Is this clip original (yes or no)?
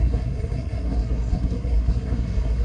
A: no